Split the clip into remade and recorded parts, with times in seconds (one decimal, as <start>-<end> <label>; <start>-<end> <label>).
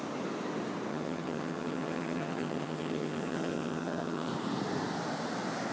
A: 0.0-0.9 recorded; 0.9-4.3 remade; 4.3-5.7 recorded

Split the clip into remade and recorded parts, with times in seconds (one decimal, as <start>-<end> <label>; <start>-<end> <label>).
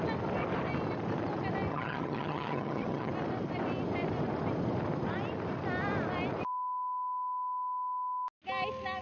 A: 0.0-1.7 recorded; 1.7-3.1 remade; 3.1-9.0 recorded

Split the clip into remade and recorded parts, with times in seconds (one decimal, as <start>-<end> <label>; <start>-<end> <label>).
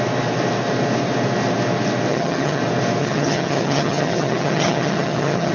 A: 0.0-2.1 recorded; 2.1-2.6 remade; 2.6-3.0 recorded; 3.0-5.5 remade